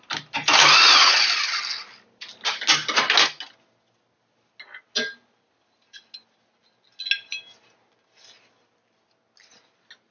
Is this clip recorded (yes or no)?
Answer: yes